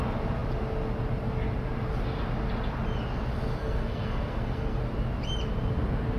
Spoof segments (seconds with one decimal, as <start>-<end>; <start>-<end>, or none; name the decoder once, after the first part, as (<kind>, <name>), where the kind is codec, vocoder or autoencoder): 3.6-4.8 (codec, SNAC)